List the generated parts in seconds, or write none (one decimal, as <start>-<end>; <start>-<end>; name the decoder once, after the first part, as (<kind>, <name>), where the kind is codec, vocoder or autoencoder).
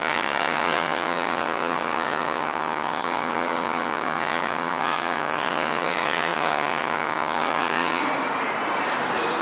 0.0-8.0 (vocoder, HiFi-GAN)